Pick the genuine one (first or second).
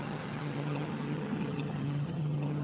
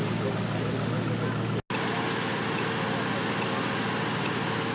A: second